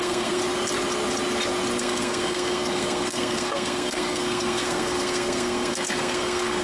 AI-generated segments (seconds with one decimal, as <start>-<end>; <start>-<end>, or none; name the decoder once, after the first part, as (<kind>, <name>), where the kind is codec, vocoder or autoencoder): 0.0-0.4 (codec, SNAC); 1.8-6.6